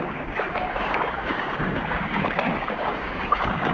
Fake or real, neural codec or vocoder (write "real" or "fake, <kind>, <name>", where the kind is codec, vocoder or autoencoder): fake, codec, DAC